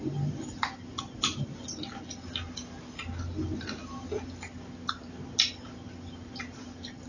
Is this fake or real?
real